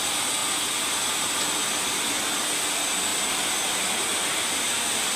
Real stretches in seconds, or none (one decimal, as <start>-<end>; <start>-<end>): 0.0-0.4; 1.4-5.2